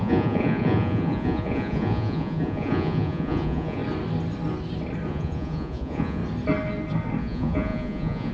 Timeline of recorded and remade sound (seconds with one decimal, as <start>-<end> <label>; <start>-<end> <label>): 0.0-3.8 remade; 3.8-5.1 recorded; 5.1-6.2 remade; 6.2-7.2 recorded; 7.2-8.3 remade

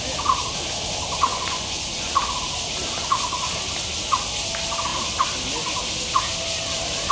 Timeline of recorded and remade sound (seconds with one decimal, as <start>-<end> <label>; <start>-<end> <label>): 0.0-1.3 recorded; 1.3-2.1 remade; 2.1-7.1 recorded

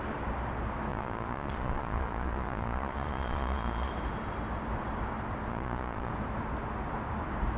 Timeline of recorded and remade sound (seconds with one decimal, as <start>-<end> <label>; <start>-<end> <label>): 0.0-0.9 recorded; 0.9-3.9 remade; 3.9-5.5 recorded; 5.5-6.1 remade; 6.1-7.6 recorded

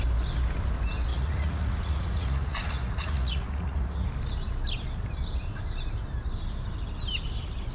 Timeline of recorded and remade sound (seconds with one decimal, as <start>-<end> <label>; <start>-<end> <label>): 0.0-1.1 recorded; 1.1-4.1 remade; 4.1-7.7 recorded

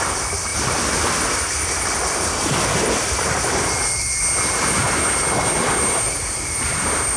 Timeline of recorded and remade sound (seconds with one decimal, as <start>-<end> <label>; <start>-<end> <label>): 0.0-7.2 recorded